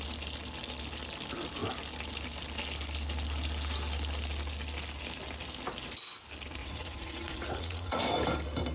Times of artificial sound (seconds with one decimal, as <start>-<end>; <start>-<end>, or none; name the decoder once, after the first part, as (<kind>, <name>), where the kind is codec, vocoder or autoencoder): 6.6-8.0 (vocoder, Vocos)